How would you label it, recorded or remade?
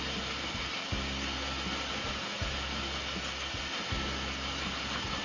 recorded